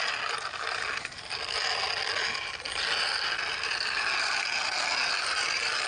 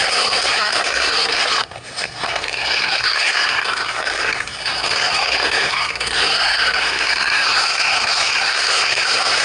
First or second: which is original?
first